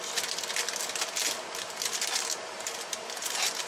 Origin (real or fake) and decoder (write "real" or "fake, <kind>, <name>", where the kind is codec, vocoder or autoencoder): real